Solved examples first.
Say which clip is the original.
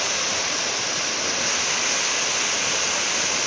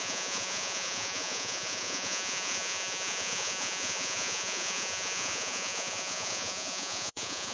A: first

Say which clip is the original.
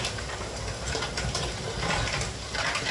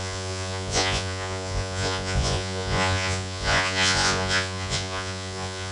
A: first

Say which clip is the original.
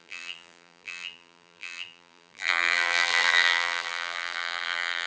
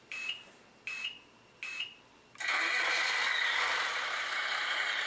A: second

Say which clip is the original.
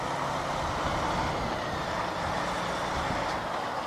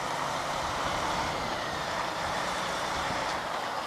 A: first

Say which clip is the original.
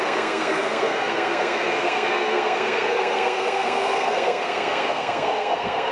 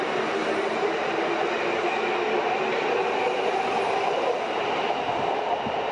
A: second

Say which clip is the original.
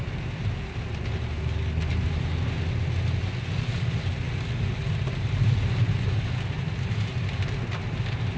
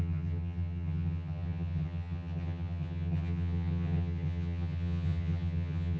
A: first